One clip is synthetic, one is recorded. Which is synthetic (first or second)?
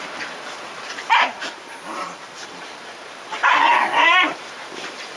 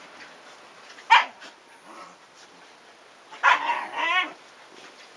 first